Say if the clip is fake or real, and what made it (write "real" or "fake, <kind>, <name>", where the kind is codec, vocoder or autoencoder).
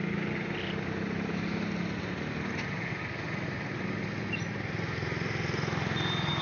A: real